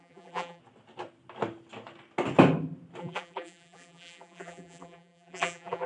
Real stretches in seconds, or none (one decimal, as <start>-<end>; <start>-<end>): 0.6-3.0